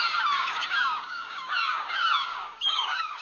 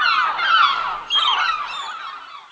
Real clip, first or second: second